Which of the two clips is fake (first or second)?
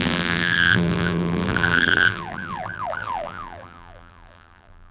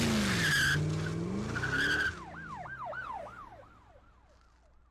first